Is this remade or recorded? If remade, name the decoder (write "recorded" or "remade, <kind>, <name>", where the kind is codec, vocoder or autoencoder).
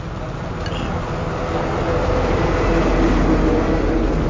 recorded